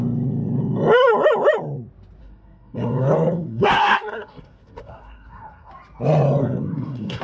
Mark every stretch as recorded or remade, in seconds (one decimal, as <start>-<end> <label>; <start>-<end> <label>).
0.0-2.2 recorded; 2.2-5.7 remade; 5.7-6.4 recorded; 6.4-7.2 remade